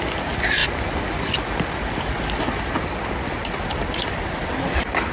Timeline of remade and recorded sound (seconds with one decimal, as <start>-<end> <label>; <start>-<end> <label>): 0.0-5.1 recorded

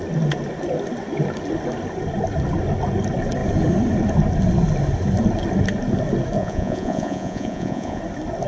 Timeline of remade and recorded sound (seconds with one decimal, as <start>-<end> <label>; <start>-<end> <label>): 0.0-6.4 recorded; 6.4-8.0 remade; 8.0-8.5 recorded

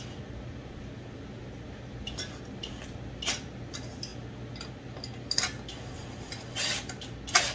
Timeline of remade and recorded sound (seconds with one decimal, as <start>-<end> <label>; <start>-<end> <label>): 0.0-7.5 recorded